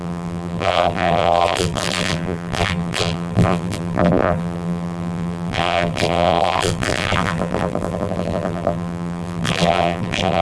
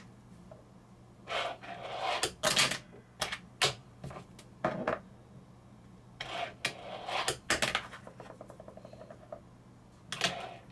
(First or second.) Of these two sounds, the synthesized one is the first